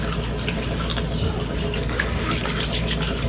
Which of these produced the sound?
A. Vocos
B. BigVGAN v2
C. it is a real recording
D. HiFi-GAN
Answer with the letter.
C